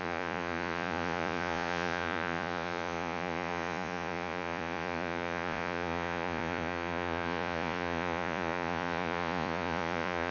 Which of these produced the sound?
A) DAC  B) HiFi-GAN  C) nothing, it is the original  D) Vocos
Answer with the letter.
D